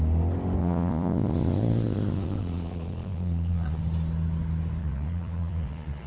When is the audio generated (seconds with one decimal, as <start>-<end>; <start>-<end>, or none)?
0.6-3.8; 4.8-6.1